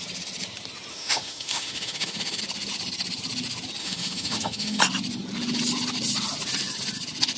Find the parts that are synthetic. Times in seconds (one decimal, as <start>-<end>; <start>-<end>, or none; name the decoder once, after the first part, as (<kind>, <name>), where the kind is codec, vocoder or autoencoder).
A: 0.9-2.4 (autoencoder, DAC-VAE); 3.8-4.8